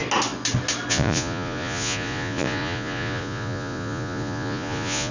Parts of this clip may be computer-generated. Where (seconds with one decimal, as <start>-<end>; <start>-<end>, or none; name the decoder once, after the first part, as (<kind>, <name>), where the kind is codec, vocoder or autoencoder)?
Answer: 0.9-5.1 (vocoder, Vocos)